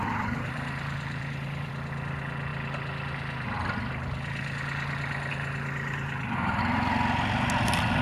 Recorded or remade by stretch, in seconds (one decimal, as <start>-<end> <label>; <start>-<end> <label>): 0.0-1.7 remade; 1.7-8.0 recorded